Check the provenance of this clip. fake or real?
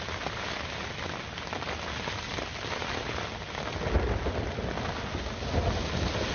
real